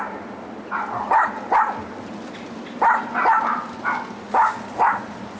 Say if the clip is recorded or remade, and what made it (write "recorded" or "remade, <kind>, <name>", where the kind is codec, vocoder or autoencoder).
recorded